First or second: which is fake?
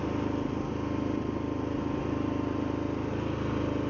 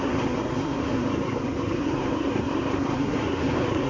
second